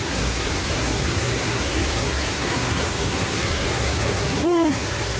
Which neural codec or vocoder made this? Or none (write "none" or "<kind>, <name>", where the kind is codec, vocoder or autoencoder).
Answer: codec, SNAC